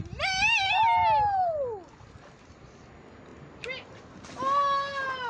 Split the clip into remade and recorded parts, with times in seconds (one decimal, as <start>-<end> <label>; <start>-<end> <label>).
0.0-5.3 recorded